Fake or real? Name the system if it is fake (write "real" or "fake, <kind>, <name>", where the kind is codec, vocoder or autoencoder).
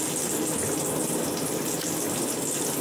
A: real